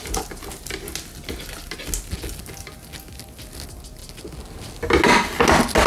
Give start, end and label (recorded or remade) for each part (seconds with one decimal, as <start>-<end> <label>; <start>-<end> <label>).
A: 0.0-5.9 recorded